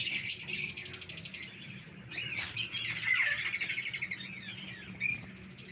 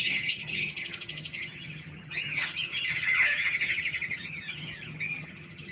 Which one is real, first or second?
first